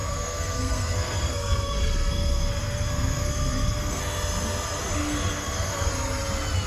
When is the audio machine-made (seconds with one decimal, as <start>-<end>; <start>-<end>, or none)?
0.0-4.0; 5.0-5.9

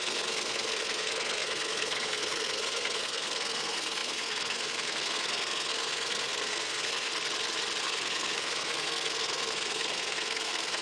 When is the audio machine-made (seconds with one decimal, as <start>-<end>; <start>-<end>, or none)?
0.0-7.1; 7.8-10.8

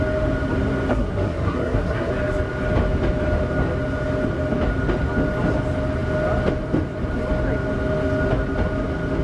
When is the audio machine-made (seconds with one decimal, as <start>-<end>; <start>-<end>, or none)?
0.9-2.1

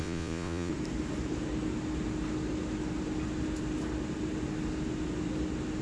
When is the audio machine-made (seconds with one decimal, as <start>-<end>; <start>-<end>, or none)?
0.0-0.7

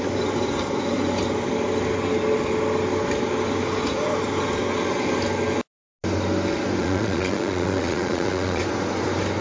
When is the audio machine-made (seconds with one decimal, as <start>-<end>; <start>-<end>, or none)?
6.8-8.6

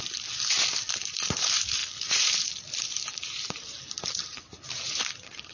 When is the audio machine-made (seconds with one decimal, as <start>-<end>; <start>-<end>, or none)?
none

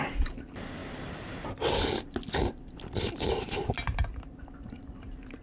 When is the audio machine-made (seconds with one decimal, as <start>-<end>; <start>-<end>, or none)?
none

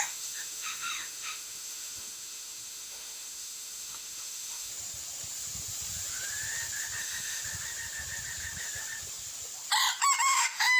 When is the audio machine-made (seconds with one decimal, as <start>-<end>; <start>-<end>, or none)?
0.0-4.7; 7.0-7.4; 10.2-10.8